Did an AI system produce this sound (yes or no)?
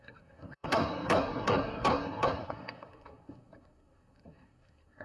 yes